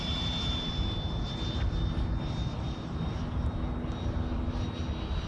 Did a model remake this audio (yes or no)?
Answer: no